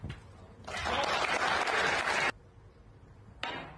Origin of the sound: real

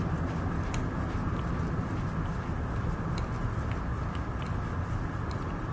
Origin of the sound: real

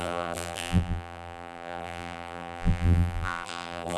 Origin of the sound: fake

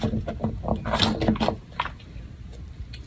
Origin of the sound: real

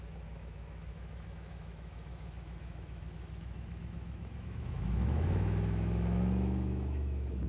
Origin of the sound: fake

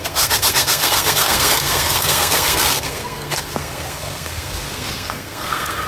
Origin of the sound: fake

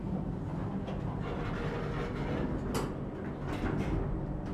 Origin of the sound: real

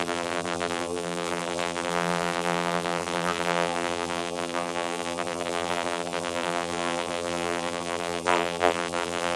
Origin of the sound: fake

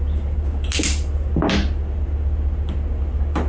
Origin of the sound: real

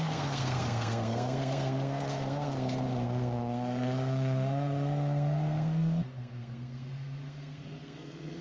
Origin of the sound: fake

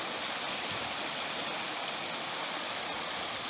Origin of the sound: real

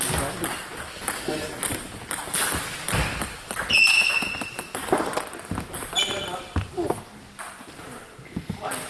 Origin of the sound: real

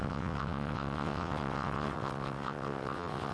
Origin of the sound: fake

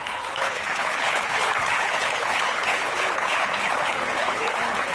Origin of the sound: fake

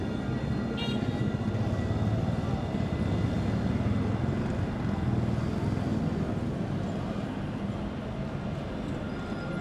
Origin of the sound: real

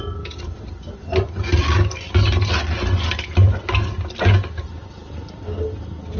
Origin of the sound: real